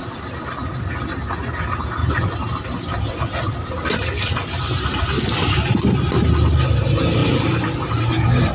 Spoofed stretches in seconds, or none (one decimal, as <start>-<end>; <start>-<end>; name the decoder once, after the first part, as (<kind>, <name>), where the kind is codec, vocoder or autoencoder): 2.0-5.6 (vocoder, BigVGAN v2); 7.2-7.9